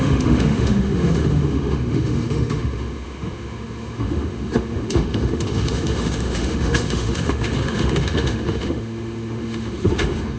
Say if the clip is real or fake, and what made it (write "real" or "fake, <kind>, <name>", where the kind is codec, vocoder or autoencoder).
fake, autoencoder, DAC-VAE